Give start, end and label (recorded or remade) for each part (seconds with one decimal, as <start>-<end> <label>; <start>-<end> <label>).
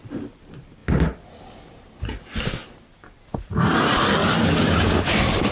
0.0-5.5 recorded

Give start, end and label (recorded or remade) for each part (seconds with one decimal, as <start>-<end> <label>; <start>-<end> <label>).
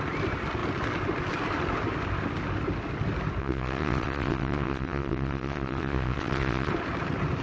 0.0-3.4 recorded; 3.4-6.7 remade; 6.7-7.4 recorded